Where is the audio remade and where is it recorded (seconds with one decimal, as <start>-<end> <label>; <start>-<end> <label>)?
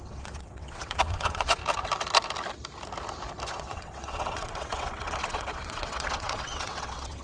0.0-1.6 remade; 1.6-3.5 recorded; 3.5-7.2 remade